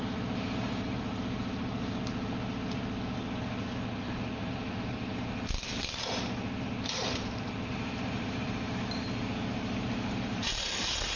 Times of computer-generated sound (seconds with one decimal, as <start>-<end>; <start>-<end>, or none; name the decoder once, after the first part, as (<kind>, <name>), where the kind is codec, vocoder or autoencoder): 0.0-1.6 (vocoder, BigVGAN v2); 4.4-11.2